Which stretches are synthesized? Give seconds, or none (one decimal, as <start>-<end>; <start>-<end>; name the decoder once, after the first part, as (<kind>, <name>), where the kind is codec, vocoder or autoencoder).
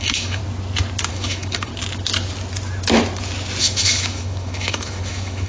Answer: 0.0-0.4 (autoencoder, DAC-VAE); 1.1-1.7; 3.6-5.5